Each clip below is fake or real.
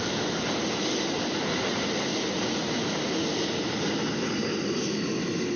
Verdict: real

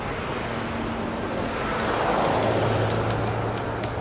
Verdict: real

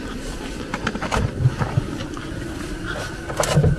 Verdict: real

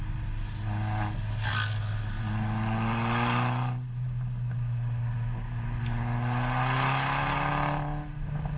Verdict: real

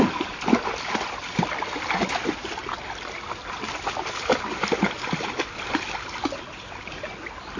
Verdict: real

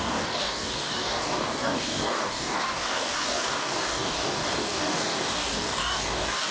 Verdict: fake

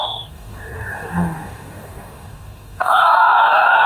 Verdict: fake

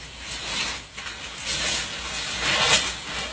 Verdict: real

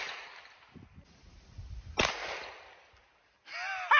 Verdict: real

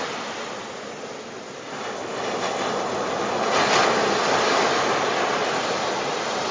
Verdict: real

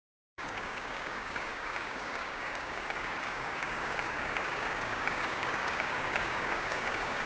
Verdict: fake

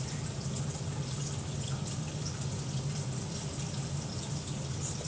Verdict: real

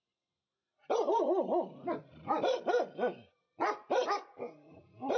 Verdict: real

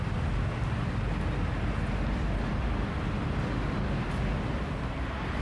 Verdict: real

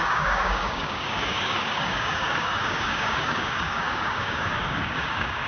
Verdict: fake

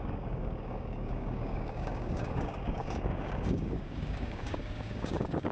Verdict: fake